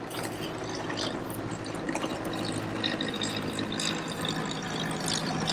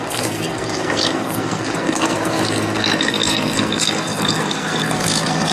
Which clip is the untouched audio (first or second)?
first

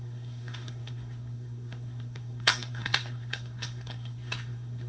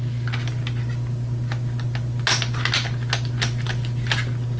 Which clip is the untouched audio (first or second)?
second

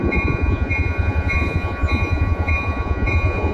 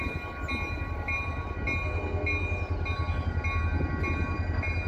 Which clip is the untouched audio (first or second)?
second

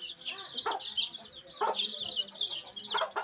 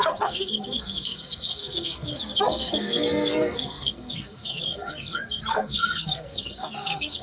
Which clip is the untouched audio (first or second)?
first